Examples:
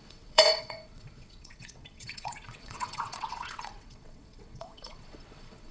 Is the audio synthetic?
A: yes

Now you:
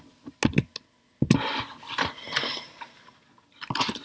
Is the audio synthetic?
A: no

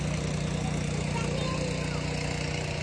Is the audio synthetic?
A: no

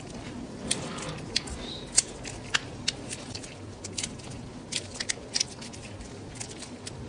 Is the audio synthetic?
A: yes